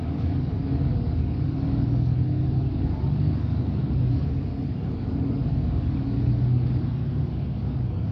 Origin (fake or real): fake